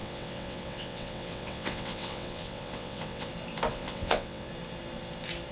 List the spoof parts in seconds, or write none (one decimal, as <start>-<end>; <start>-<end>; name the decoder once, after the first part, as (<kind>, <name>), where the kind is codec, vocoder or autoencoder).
0.0-3.3 (vocoder, WaveNeXt); 3.7-4.5